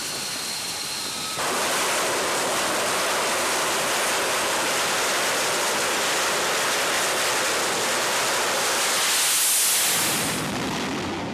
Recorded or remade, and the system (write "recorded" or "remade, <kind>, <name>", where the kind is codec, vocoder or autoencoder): recorded